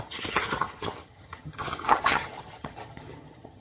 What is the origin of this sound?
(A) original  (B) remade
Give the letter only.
B